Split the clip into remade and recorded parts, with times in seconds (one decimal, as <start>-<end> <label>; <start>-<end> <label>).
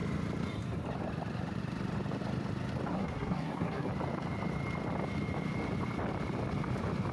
0.0-2.9 recorded; 2.9-3.9 remade; 3.9-7.1 recorded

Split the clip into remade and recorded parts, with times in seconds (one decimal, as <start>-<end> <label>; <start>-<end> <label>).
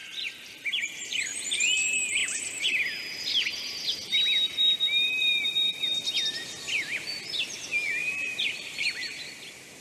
0.0-1.5 remade; 1.5-8.0 recorded; 8.0-9.3 remade; 9.3-9.8 recorded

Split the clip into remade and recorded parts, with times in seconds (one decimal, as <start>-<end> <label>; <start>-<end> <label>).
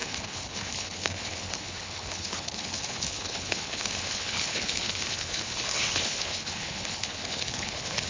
0.0-8.1 remade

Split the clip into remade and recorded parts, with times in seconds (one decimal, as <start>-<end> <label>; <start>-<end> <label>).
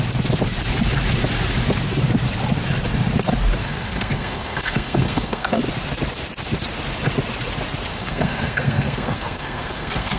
0.0-3.6 recorded; 3.6-5.6 remade; 5.6-7.9 recorded; 7.9-10.2 remade